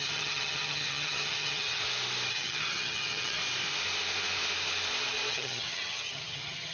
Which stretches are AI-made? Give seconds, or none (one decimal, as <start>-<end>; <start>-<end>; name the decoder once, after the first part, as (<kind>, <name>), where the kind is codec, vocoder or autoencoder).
0.0-1.8 (vocoder, HiFi-GAN); 2.3-3.4; 5.3-6.7